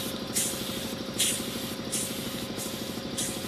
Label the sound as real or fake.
real